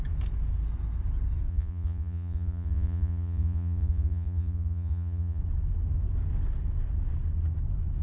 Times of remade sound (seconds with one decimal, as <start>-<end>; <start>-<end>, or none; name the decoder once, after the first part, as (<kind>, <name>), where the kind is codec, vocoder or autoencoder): 1.5-5.4 (vocoder, Vocos)